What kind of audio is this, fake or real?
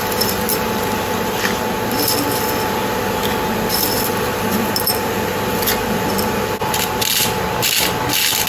real